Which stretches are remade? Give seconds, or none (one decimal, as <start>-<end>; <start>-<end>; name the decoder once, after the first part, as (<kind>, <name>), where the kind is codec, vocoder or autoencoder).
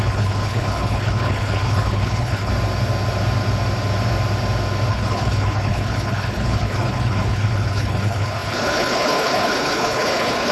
0.0-2.5 (codec, HILCodec); 4.9-10.5